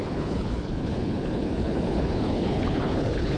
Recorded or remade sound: remade